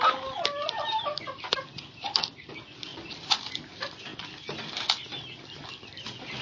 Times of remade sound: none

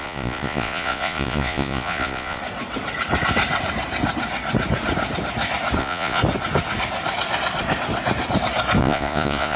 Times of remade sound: 0.0-2.4; 5.8-6.2; 8.8-9.6

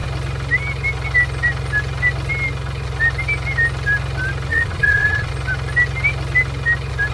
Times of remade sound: 4.5-5.3

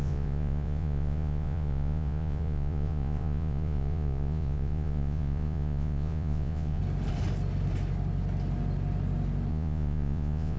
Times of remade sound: 0.0-6.8; 9.5-10.6

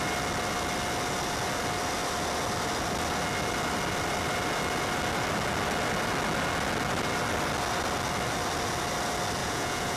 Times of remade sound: 9.4-10.0

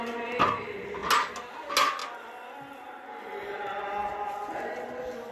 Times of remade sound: none

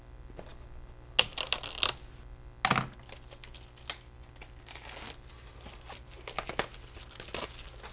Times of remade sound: none

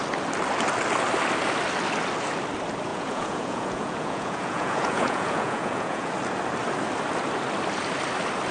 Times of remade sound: 2.9-6.1